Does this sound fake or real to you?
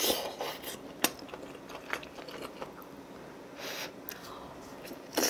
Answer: real